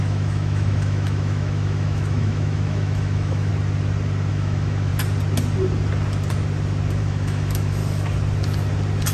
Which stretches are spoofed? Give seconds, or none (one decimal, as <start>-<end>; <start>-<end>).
0.0-3.5; 4.3-4.9; 7.0-7.8